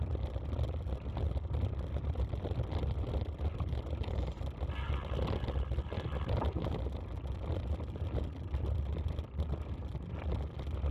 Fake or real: real